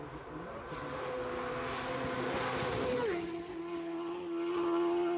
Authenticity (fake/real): real